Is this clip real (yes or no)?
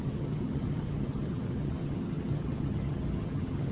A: no